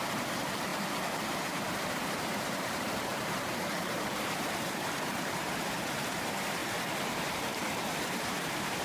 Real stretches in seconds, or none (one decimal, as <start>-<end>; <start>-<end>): 6.6-7.1; 7.5-8.1